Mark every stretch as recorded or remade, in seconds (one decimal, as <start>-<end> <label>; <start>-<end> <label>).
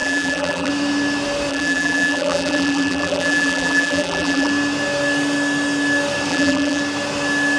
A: 0.0-0.7 remade; 0.7-1.5 recorded; 1.5-4.5 remade; 4.5-6.3 recorded; 6.3-6.8 remade; 6.8-7.6 recorded